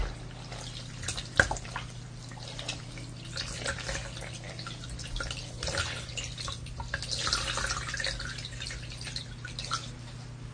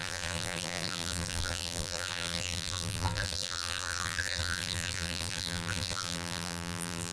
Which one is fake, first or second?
second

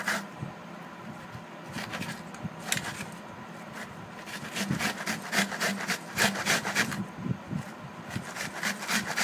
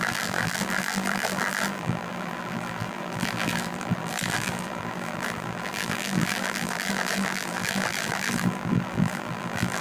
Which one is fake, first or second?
second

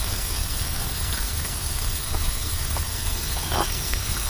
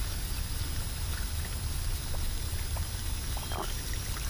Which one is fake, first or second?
first